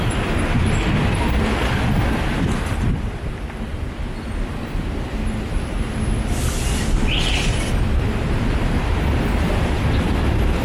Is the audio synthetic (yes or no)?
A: no